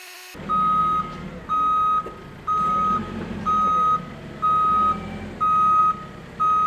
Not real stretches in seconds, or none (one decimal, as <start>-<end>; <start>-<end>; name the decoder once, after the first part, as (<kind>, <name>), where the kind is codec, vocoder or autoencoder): none